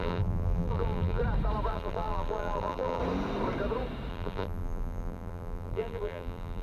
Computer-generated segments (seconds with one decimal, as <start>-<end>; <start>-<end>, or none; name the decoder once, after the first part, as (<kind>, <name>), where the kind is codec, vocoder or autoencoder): 0.0-1.2 (vocoder, BigVGAN v2); 1.7-3.0; 4.1-6.6